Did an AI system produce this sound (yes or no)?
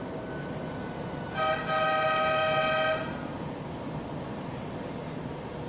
no